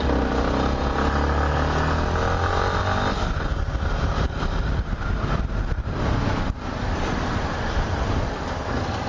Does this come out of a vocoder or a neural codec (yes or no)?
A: no